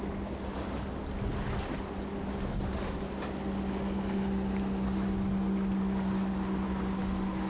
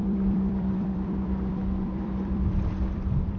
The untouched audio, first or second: first